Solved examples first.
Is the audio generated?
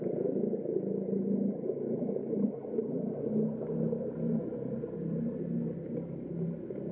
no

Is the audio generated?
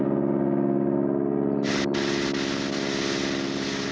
no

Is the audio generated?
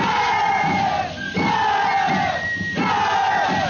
no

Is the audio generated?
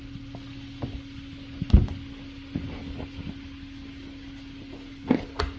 no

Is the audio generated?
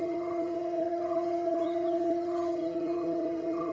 yes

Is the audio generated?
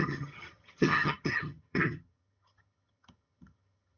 yes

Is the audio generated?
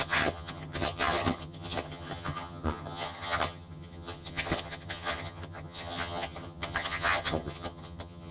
yes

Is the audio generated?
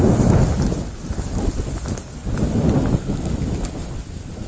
no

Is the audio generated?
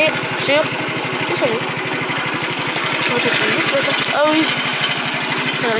no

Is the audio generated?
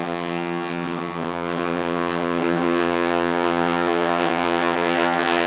yes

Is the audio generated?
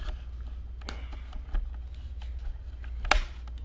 no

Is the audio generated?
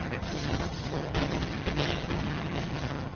yes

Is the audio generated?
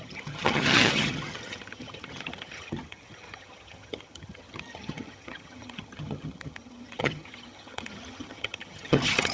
yes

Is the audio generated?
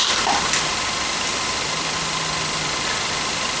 no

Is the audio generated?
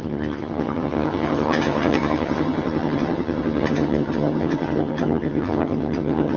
yes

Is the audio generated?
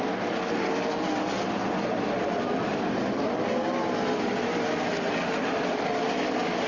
no